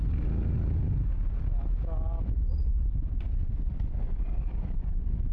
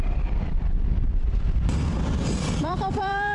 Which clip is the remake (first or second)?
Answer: second